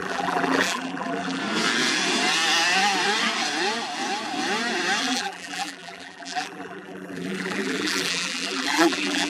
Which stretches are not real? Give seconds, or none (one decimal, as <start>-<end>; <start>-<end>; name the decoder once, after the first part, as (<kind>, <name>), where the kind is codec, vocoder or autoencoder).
0.0-1.4 (vocoder, BigVGAN v2); 5.0-9.3